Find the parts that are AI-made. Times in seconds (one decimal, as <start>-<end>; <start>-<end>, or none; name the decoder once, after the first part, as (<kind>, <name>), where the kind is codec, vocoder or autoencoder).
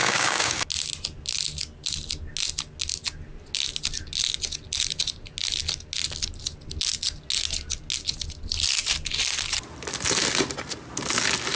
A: 0.0-0.7 (codec, DAC)